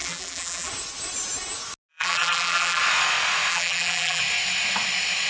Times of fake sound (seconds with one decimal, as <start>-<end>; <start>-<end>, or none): 0.0-0.7; 1.9-2.8; 3.5-4.2